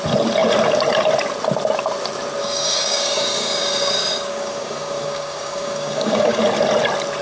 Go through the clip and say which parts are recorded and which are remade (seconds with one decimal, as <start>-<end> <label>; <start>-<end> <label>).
0.0-2.4 recorded; 2.4-6.4 remade; 6.4-7.2 recorded